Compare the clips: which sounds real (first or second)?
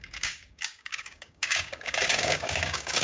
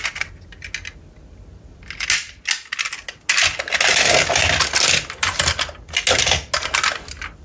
second